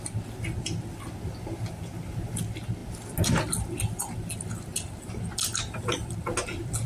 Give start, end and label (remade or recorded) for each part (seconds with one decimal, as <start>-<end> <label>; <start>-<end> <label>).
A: 0.0-6.9 recorded